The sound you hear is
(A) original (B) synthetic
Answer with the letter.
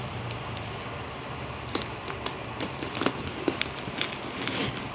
A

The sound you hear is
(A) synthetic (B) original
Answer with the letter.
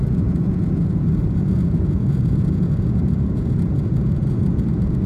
A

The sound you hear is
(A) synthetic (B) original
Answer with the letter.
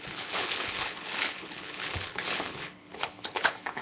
A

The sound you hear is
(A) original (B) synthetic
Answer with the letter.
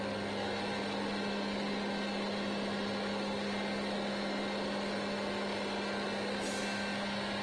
A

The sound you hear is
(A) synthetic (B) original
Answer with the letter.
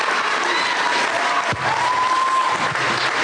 B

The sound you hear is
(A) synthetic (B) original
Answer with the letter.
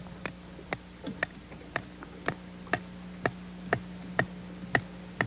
B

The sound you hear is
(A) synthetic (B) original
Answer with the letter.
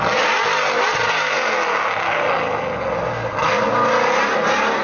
B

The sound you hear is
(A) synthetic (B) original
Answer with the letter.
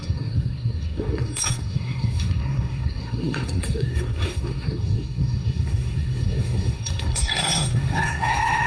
A